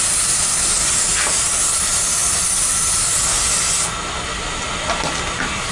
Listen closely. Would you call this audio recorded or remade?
recorded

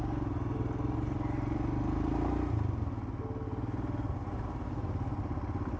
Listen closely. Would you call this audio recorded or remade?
recorded